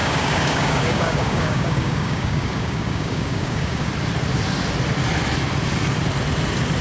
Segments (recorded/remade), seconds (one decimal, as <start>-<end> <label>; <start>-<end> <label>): 0.0-3.9 remade; 3.9-6.8 recorded